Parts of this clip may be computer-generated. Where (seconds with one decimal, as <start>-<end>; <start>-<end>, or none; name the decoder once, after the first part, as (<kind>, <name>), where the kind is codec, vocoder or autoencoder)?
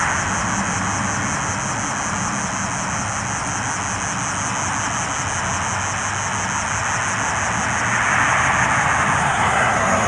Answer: 9.2-10.1 (codec, SNAC)